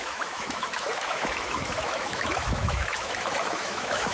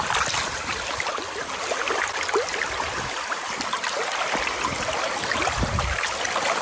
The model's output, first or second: first